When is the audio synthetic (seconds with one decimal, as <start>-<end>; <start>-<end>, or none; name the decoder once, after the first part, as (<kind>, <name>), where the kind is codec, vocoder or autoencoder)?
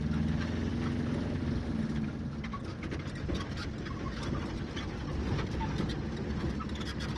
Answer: none